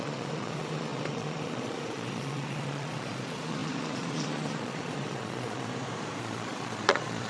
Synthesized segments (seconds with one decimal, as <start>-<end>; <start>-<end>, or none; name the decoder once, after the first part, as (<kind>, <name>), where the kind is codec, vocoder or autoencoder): 0.0-5.7 (vocoder, Vocos); 6.2-7.3